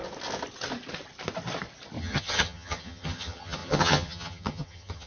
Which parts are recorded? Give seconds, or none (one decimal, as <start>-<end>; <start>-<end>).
0.0-2.0